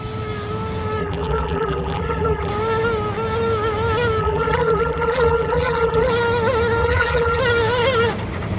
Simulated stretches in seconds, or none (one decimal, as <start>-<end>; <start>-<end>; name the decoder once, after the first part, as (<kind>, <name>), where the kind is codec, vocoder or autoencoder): 1.0-2.5 (vocoder, BigVGAN v2); 4.2-6.1; 6.8-7.4